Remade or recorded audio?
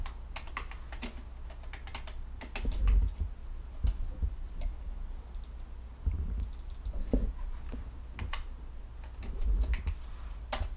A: recorded